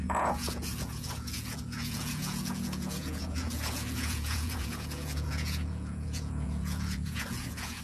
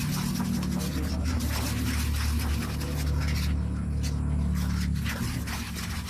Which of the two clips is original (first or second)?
second